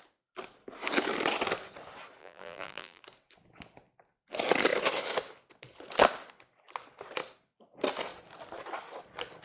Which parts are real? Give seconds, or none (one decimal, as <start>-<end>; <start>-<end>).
0.0-2.2; 3.0-9.4